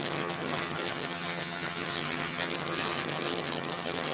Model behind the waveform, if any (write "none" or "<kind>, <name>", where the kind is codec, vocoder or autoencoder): vocoder, HiFi-GAN